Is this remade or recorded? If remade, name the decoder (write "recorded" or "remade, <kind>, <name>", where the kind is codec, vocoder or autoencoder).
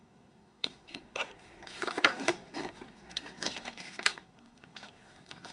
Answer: remade, codec, SNAC